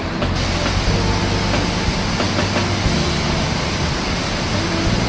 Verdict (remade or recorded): recorded